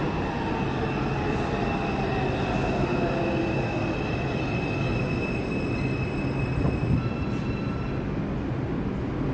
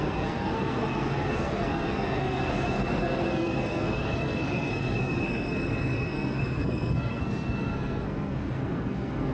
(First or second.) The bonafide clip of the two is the first